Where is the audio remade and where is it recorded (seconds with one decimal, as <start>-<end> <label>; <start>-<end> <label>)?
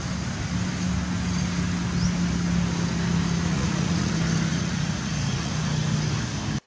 0.0-3.5 recorded; 3.5-4.1 remade; 4.1-4.5 recorded; 4.5-5.5 remade; 5.5-6.7 recorded